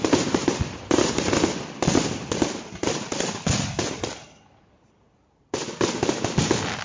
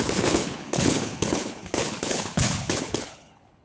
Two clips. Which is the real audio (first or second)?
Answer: first